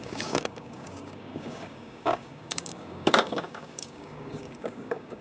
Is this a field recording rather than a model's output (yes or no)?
no